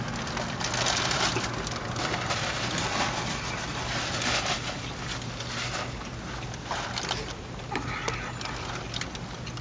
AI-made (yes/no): no